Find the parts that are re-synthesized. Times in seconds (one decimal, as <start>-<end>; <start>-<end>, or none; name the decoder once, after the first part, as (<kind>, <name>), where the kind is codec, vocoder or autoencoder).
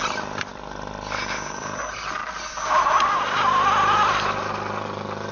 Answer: none